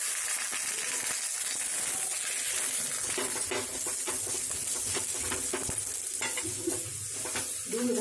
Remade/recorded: recorded